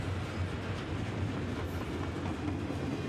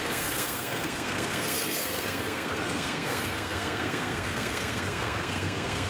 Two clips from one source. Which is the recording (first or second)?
first